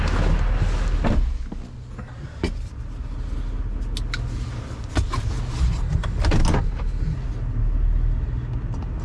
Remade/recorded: recorded